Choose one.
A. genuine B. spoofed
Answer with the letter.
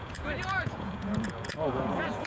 B